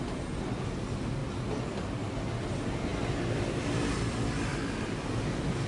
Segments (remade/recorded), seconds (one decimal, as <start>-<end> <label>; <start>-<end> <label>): 0.0-1.2 recorded; 1.2-1.9 remade; 1.9-5.7 recorded